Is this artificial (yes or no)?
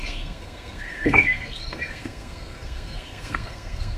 yes